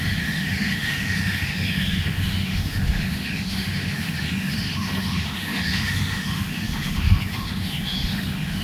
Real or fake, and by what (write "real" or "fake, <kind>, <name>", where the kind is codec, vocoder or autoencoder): fake, autoencoder, DAC-VAE